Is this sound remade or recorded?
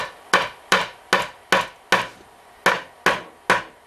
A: recorded